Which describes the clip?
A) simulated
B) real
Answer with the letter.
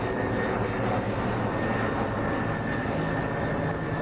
B